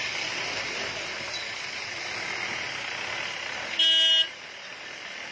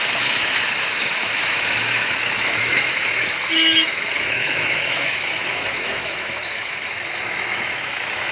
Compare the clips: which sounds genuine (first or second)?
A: first